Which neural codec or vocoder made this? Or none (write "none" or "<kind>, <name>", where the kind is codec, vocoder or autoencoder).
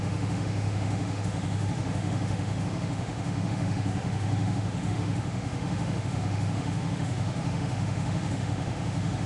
autoencoder, DAC-VAE